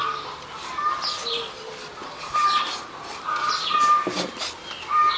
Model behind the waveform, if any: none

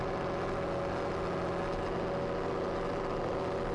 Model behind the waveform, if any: none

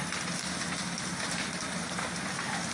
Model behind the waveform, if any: none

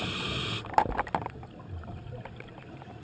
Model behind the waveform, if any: none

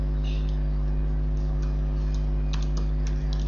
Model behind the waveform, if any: none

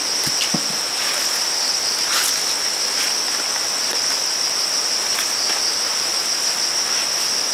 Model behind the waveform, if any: none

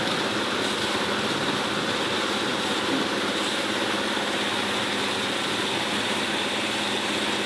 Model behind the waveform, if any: none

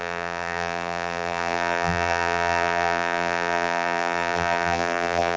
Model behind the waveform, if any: vocoder, BigVGAN v2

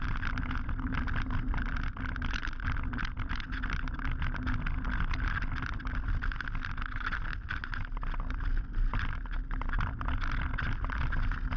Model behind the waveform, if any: none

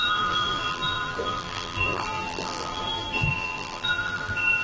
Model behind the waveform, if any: vocoder, BigVGAN v2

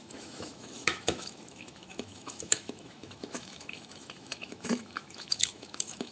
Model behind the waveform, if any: autoencoder, DAC-VAE